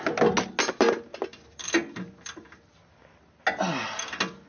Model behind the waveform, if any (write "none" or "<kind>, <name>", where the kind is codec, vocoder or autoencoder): none